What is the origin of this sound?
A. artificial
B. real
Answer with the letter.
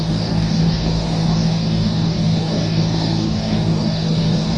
A